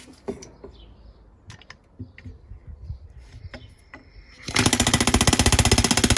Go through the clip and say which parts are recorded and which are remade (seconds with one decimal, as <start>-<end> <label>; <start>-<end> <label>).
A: 0.0-6.2 recorded